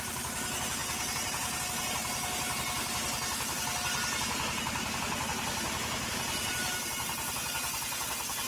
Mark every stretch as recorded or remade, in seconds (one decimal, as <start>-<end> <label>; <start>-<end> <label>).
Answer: 0.0-8.5 recorded